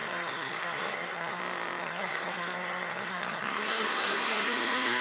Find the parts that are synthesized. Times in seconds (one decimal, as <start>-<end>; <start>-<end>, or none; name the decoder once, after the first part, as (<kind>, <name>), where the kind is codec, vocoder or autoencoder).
0.0-1.4 (codec, SNAC); 1.8-5.0